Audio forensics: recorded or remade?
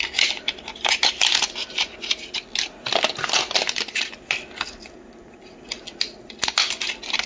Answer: recorded